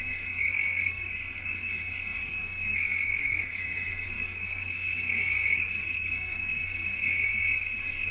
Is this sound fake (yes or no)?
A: yes